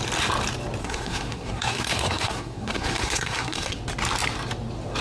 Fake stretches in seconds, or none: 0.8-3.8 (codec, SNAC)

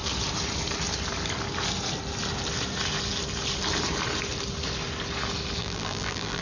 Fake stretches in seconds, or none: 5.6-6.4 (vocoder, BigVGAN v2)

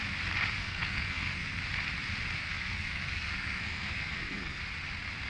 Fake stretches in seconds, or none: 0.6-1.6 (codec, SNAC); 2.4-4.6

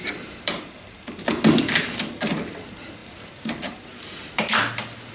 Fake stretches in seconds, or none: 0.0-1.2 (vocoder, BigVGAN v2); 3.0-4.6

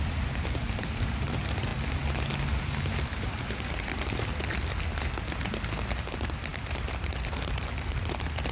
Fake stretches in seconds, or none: 0.0-1.7 (vocoder, BigVGAN v2); 2.6-4.3; 6.1-8.5

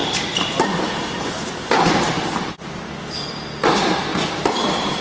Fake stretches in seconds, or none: 0.0-2.8 (vocoder, BigVGAN v2); 4.1-5.0